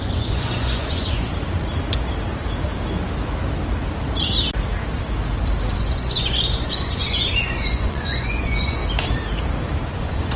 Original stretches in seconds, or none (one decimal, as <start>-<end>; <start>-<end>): 1.3-5.8; 8.8-9.8